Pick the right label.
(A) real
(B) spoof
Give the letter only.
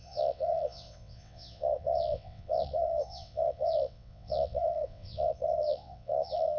B